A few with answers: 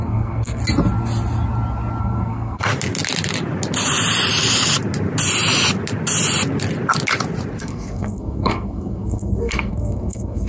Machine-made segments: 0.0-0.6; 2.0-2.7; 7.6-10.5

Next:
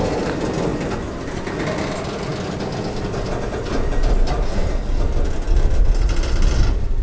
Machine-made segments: none

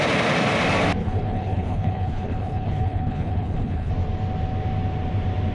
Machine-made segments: 1.0-3.9

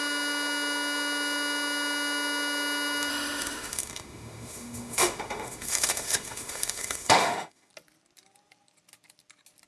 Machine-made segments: 3.1-7.7